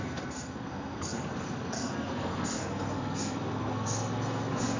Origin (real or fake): fake